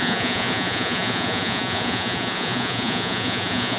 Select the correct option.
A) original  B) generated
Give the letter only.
B